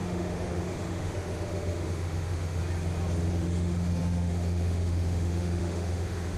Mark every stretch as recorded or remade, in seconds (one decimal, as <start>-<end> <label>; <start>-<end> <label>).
0.0-2.6 remade; 2.6-3.3 recorded; 3.3-6.4 remade